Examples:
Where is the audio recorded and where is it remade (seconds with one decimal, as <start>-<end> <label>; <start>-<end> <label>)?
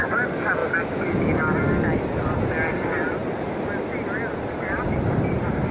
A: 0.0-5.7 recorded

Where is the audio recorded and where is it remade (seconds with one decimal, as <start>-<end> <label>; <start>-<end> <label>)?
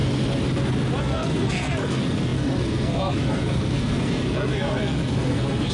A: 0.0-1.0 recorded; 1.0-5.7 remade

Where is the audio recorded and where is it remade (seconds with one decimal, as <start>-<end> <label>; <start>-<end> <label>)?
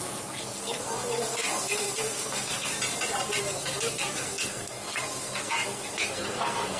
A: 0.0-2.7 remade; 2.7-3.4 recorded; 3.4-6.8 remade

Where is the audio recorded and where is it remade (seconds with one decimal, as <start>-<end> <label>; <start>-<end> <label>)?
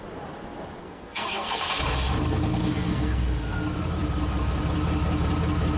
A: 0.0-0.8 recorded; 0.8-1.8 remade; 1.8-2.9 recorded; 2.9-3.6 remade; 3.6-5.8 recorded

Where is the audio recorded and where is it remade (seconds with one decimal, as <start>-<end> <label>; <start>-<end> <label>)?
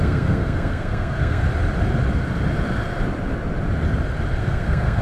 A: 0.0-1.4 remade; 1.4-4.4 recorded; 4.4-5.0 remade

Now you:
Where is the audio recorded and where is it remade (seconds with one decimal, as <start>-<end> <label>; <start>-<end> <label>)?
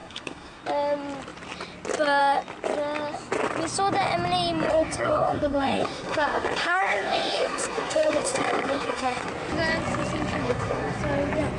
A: 0.0-0.6 remade; 0.6-4.7 recorded; 4.7-9.3 remade; 9.3-10.4 recorded; 10.4-11.0 remade; 11.0-11.6 recorded